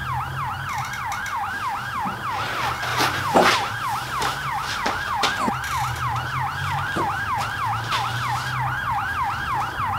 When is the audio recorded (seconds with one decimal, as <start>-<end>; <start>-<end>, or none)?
0.5-2.9; 3.5-4.6; 5.4-10.0